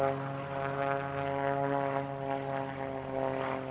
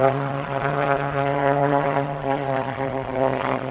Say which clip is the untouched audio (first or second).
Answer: first